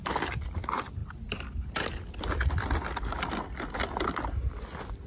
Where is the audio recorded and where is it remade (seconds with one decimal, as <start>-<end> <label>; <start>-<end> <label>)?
0.0-5.1 recorded